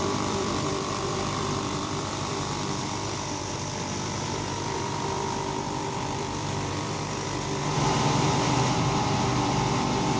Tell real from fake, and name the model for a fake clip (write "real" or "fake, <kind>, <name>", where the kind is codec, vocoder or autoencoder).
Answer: fake, vocoder, BigVGAN v2